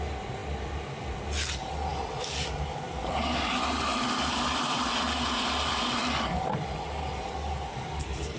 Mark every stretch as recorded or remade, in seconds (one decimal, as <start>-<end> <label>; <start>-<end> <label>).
0.0-8.4 recorded